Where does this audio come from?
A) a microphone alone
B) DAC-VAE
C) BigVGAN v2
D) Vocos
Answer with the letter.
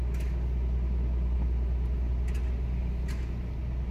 A